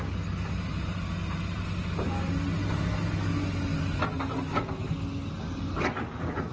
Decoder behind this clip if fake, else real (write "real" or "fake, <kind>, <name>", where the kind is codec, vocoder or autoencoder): real